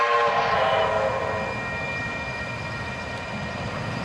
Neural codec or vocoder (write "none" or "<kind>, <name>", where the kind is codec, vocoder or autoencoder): none